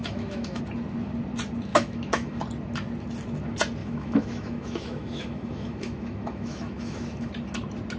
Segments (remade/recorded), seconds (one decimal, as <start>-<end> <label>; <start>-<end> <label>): 0.0-0.6 remade; 0.6-1.7 recorded; 1.7-2.4 remade; 2.4-3.8 recorded; 3.8-7.3 remade; 7.3-8.0 recorded